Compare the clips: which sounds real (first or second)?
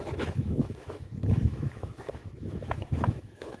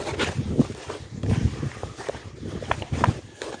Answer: second